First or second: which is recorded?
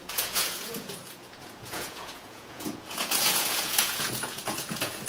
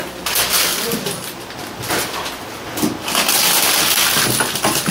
second